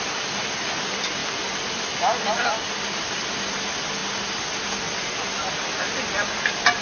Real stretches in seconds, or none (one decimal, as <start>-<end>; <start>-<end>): 1.2-1.8; 4.0-4.8